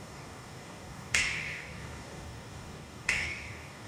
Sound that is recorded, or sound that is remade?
remade